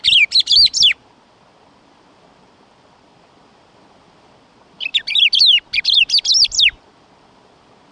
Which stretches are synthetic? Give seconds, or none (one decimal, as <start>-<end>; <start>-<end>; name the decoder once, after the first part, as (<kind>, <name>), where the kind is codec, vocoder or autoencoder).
none